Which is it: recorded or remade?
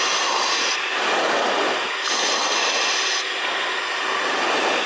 recorded